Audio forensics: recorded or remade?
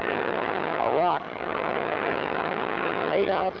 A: remade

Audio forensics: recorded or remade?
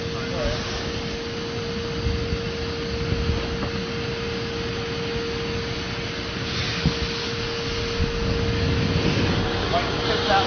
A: recorded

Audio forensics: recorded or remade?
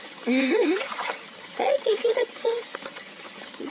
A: remade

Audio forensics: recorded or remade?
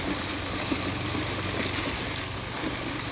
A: recorded